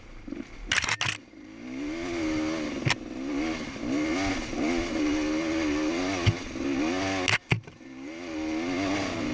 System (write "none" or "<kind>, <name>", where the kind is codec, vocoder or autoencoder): none